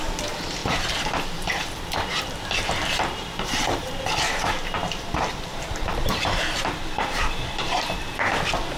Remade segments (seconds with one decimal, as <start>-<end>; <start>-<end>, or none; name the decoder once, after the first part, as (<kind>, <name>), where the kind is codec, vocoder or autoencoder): 0.0-8.8 (vocoder, BigVGAN v2)